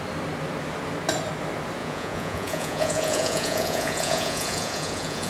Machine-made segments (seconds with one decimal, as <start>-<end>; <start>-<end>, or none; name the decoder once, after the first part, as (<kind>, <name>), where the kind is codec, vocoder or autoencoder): 1.8-5.3 (vocoder, Vocos)